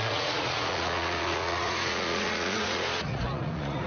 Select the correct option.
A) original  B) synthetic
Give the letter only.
B